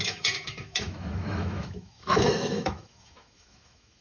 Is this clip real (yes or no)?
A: no